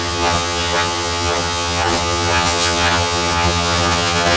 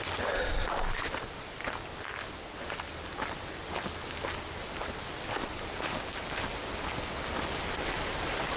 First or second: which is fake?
first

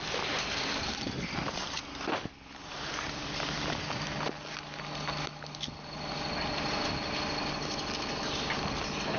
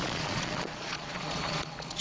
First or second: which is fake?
second